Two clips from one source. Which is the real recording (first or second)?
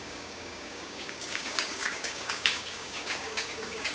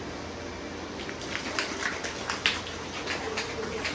second